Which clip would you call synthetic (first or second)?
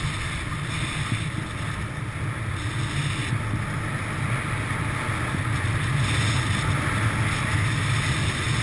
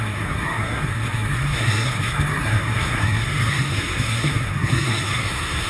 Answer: second